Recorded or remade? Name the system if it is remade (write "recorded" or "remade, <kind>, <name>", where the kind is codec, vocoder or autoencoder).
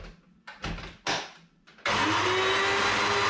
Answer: recorded